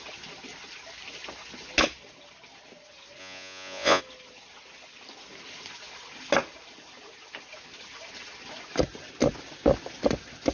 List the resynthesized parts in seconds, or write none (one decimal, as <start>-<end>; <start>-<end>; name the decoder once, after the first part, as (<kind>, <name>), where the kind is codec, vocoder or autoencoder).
3.2-4.0 (vocoder, Vocos)